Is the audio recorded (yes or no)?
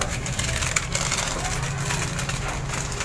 yes